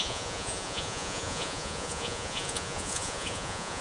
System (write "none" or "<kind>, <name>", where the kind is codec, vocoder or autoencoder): vocoder, Vocos